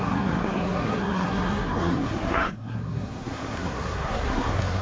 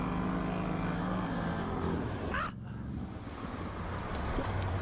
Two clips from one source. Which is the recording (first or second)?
second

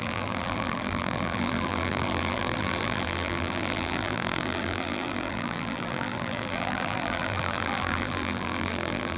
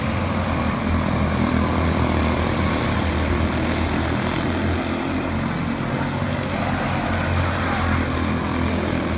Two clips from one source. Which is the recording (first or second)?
second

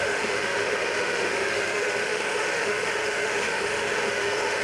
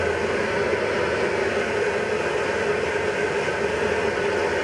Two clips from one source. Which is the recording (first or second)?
second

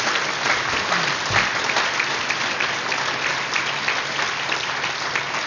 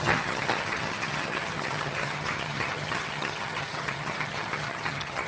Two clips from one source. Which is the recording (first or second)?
first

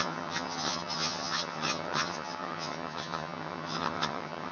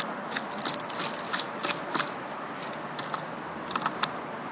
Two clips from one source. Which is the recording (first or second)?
second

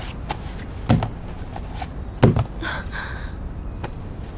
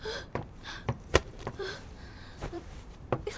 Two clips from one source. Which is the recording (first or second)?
first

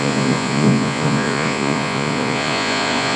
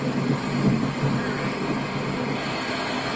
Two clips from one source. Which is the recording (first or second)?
second